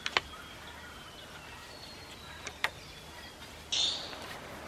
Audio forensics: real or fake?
real